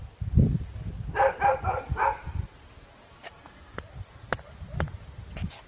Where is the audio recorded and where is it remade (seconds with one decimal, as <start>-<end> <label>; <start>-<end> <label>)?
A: 0.0-5.7 recorded